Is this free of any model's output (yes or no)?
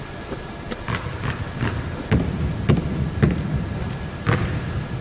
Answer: yes